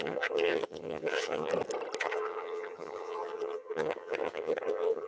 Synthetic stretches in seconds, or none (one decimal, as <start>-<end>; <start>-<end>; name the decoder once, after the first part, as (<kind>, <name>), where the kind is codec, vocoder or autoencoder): 0.0-1.5 (vocoder, HiFi-GAN); 2.0-5.1